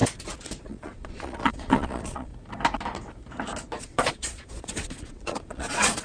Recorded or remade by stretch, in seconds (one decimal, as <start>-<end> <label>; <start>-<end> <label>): 0.0-0.6 recorded; 0.6-2.3 remade; 2.3-3.8 recorded; 3.8-6.0 remade